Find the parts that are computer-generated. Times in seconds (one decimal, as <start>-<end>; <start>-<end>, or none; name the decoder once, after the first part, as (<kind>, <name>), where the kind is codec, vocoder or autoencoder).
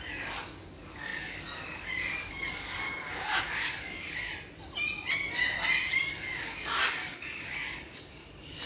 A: 0.0-4.3 (codec, DAC); 5.9-8.7